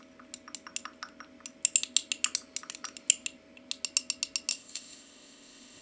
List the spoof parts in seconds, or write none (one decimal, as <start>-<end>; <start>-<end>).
4.5-5.8